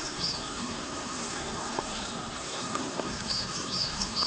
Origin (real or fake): fake